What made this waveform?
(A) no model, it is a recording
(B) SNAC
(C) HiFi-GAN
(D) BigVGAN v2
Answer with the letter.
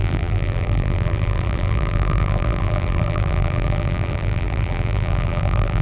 D